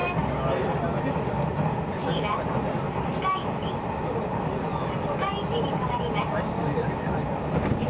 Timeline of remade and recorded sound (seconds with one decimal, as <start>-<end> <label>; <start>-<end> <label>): 0.0-7.9 recorded